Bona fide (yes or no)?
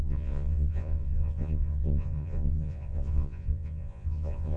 no